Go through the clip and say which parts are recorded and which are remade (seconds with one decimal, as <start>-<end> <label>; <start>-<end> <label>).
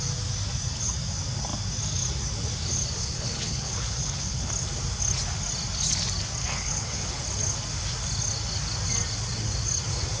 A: 0.0-3.0 recorded; 3.0-4.5 remade; 4.5-6.4 recorded; 6.4-7.2 remade; 7.2-10.2 recorded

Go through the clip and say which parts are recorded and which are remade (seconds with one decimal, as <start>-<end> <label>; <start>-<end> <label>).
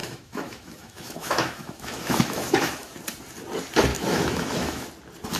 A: 0.0-3.0 remade; 3.0-3.9 recorded; 3.9-4.9 remade; 4.9-5.4 recorded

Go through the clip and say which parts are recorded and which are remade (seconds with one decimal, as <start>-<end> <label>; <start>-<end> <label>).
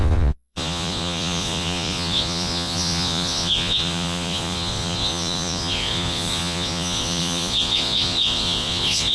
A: 0.0-9.1 remade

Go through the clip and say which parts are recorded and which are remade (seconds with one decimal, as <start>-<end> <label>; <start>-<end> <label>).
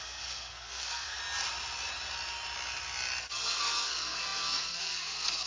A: 0.0-1.2 remade; 1.2-3.2 recorded; 3.2-5.5 remade